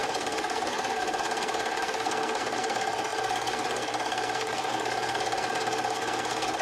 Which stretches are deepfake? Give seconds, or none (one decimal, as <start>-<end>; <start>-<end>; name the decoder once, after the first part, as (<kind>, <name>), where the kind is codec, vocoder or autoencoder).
0.0-6.6 (codec, SNAC)